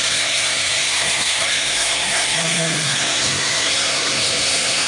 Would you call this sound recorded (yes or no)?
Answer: no